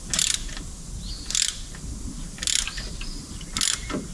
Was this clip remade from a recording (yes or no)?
no